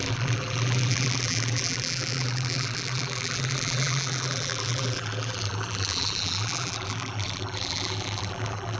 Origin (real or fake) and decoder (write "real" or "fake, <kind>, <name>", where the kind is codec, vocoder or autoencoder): fake, vocoder, BigVGAN v2